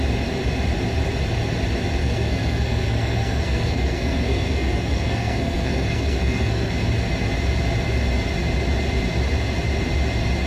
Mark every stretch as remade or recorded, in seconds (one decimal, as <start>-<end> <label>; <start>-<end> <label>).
0.0-2.0 recorded; 2.0-6.7 remade; 6.7-10.5 recorded